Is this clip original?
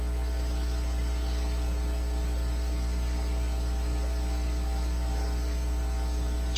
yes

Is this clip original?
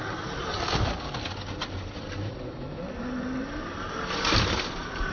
yes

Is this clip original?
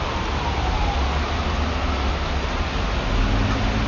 yes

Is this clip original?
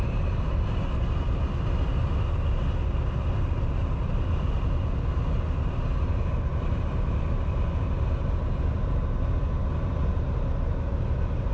yes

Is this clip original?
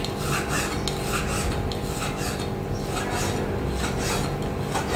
yes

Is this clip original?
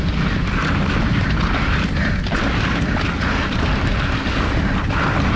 yes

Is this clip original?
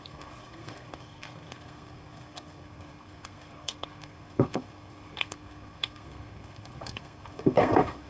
no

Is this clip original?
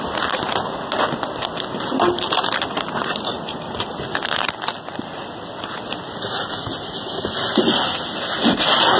yes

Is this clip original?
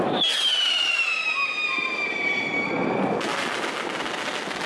yes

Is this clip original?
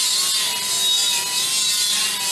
yes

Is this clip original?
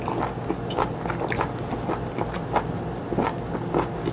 yes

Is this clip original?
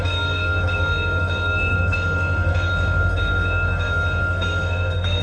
no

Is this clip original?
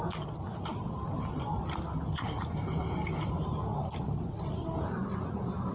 yes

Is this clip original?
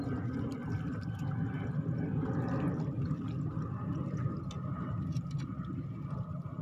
yes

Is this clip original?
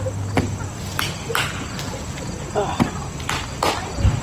yes